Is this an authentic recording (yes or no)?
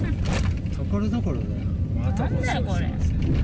yes